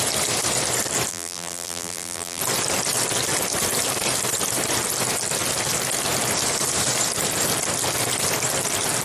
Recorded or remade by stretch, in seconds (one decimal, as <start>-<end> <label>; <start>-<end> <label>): 0.0-1.1 recorded; 1.1-2.4 remade; 2.4-9.0 recorded